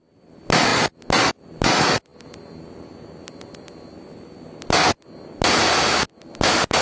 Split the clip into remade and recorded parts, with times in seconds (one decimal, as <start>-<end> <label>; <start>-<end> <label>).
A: 0.0-6.8 recorded